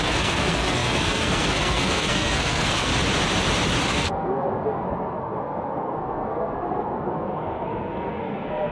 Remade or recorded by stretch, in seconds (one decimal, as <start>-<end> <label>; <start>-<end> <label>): 0.0-2.9 remade; 2.9-3.9 recorded; 3.9-8.7 remade

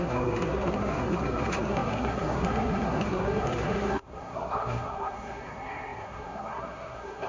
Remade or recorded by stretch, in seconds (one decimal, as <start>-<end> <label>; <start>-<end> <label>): 0.0-7.3 remade

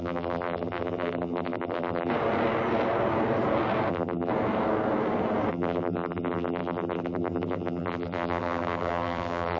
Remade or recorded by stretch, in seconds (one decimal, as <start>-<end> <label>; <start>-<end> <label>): 0.0-2.1 remade; 2.1-3.9 recorded; 3.9-4.3 remade; 4.3-5.5 recorded; 5.5-9.6 remade

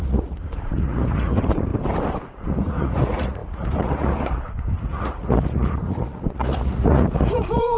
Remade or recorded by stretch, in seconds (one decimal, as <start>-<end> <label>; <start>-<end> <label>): 0.0-1.7 remade; 1.7-2.4 recorded; 2.4-7.8 remade

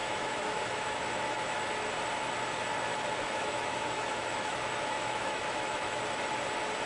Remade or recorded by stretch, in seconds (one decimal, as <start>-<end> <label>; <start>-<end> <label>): 0.0-1.7 remade; 1.7-2.9 recorded; 2.9-6.0 remade; 6.0-6.9 recorded